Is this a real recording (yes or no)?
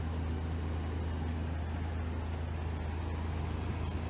yes